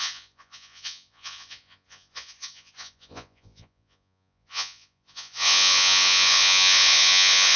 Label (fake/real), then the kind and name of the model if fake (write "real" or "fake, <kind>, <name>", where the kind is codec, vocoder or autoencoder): fake, vocoder, Vocos